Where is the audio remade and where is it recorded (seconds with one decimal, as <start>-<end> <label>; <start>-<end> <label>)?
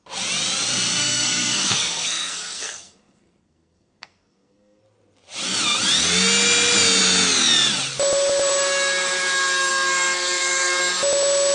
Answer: 0.0-1.0 recorded; 1.0-4.8 remade; 4.8-9.7 recorded; 9.7-10.8 remade; 10.8-11.5 recorded